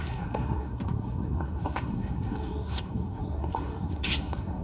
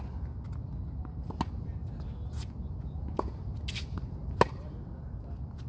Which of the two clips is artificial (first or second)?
first